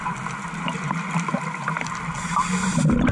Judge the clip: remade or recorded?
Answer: recorded